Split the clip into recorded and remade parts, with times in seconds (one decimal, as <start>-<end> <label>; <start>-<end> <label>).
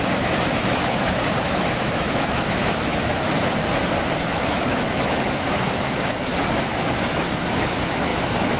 0.0-3.0 remade; 3.0-4.1 recorded; 4.1-6.3 remade; 6.3-7.0 recorded; 7.0-8.6 remade